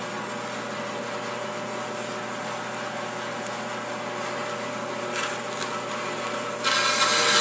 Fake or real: real